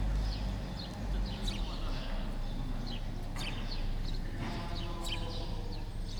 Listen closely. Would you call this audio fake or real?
real